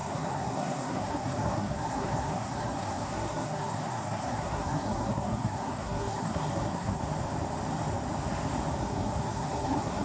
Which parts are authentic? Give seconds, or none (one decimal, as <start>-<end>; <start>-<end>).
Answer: 7.0-8.8